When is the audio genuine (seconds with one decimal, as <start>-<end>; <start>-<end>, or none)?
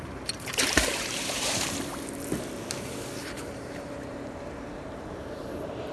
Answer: 1.9-3.2